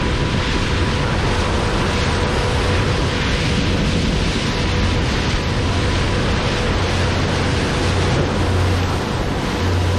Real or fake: real